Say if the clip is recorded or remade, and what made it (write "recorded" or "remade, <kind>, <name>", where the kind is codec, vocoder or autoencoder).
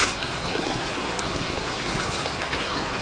remade, codec, SNAC